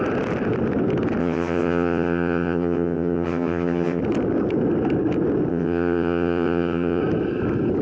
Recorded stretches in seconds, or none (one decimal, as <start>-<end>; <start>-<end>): 0.0-1.2; 4.0-5.5; 7.0-7.8